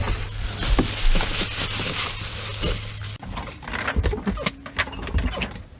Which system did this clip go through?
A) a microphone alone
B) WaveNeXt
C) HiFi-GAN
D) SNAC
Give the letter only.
A